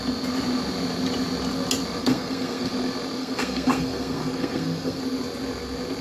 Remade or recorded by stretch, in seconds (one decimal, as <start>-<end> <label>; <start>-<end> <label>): 0.0-2.0 recorded; 2.0-2.7 remade; 2.7-3.2 recorded; 3.2-5.0 remade; 5.0-6.0 recorded